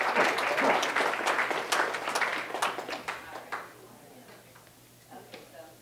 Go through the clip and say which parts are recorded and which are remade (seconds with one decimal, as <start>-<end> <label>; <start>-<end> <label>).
0.0-5.8 recorded